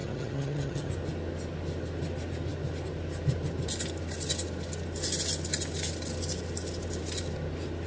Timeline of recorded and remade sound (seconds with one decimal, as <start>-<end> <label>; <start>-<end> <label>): 0.0-0.9 remade; 0.9-7.9 recorded